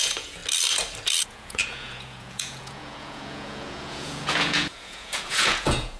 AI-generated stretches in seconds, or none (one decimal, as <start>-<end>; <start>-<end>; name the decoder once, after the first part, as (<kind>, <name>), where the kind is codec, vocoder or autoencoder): 0.0-0.4 (vocoder, Vocos); 1.2-6.0